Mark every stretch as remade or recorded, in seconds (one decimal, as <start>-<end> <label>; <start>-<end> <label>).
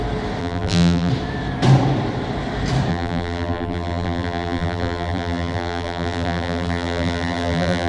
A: 0.0-0.4 recorded; 0.4-1.1 remade; 1.1-2.9 recorded; 2.9-7.9 remade